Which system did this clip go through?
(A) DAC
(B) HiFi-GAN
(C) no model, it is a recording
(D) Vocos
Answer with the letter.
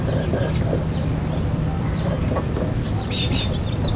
C